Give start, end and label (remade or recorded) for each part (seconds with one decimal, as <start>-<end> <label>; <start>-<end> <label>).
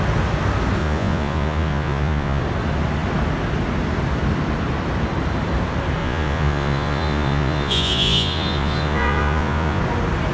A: 0.0-0.8 recorded; 0.8-2.4 remade; 2.4-6.0 recorded; 6.0-9.8 remade; 9.8-10.3 recorded